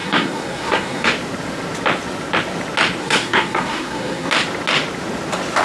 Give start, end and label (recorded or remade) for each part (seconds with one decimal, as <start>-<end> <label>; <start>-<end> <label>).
0.0-1.1 remade; 1.1-3.0 recorded; 3.0-4.3 remade; 4.3-5.6 recorded